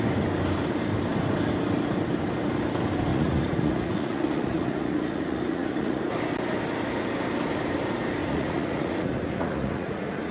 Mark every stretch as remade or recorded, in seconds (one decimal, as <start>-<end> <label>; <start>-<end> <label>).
0.0-3.1 recorded; 3.1-6.0 remade; 6.0-8.2 recorded; 8.2-10.3 remade